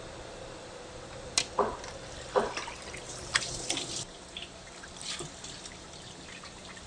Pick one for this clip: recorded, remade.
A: recorded